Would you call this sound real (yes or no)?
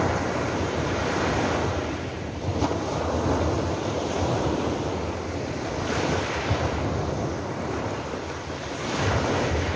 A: no